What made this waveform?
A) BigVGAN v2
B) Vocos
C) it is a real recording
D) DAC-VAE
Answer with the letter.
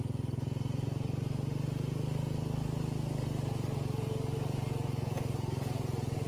C